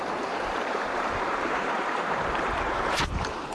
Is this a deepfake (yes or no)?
yes